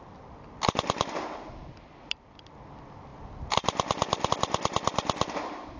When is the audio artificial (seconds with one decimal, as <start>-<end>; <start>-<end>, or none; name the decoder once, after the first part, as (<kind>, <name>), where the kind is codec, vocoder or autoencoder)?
none